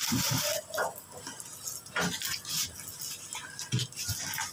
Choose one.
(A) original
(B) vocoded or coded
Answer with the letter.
A